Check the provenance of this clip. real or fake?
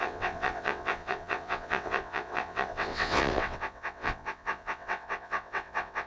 fake